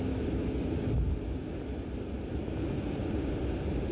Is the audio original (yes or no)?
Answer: yes